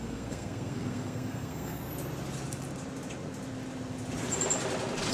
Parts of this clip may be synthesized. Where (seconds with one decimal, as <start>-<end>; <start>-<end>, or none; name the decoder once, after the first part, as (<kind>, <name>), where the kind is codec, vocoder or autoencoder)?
0.0-1.9 (codec, SNAC)